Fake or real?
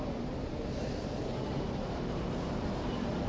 fake